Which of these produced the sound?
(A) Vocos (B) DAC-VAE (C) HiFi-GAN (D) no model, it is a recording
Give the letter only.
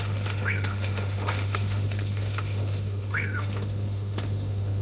B